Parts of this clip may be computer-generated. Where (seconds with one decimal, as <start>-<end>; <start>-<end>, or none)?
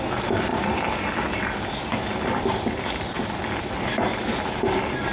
none